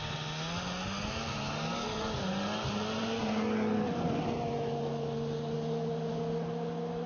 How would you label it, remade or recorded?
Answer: recorded